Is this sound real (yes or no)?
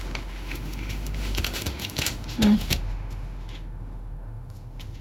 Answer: no